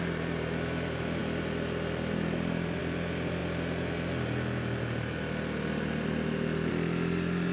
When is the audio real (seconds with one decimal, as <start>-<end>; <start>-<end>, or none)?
0.0-7.5